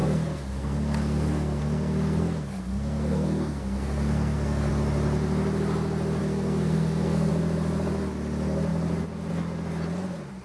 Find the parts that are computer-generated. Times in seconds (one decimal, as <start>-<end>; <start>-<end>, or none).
0.0-4.7; 6.2-7.3